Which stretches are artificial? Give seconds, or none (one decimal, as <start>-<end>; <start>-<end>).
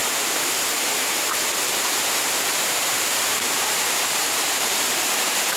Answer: 2.5-5.6